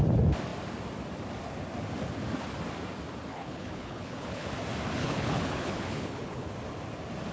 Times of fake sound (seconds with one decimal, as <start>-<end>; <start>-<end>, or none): 3.3-4.5; 5.0-6.5